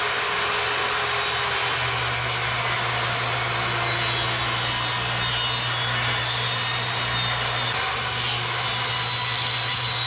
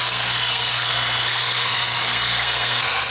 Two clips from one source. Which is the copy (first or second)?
second